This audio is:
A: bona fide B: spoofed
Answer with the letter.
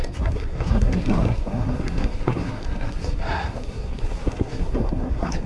B